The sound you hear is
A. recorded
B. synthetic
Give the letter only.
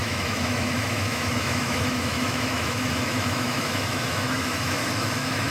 B